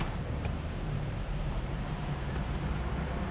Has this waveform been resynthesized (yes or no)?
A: yes